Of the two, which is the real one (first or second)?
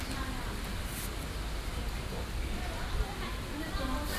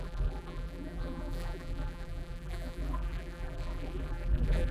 first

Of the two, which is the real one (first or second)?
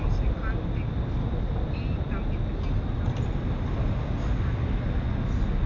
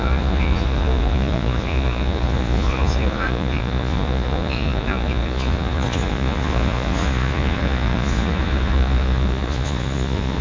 first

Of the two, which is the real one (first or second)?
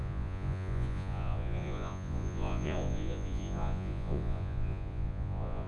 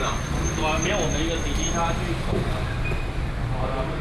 second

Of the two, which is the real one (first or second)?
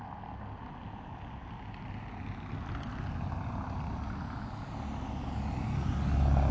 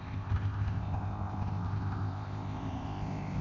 first